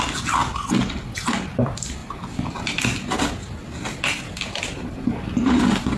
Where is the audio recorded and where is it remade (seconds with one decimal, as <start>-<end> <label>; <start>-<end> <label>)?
0.0-0.4 remade; 0.4-1.3 recorded; 1.3-2.0 remade; 2.0-4.6 recorded; 4.6-6.0 remade